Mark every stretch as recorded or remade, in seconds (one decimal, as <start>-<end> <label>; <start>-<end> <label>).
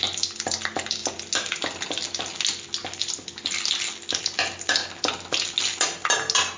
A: 0.0-6.6 recorded